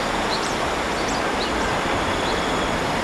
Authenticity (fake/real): real